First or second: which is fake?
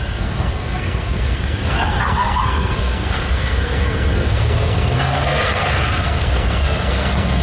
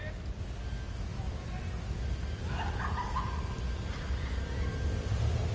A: first